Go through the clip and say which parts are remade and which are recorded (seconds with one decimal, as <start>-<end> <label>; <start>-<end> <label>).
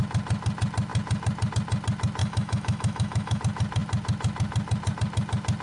0.0-2.2 recorded; 2.2-3.4 remade; 3.4-5.6 recorded